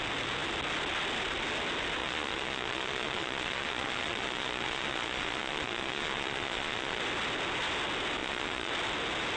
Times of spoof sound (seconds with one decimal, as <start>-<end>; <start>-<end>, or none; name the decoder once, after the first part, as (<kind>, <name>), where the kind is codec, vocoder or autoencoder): 2.0-7.0 (vocoder, Vocos); 8.2-8.7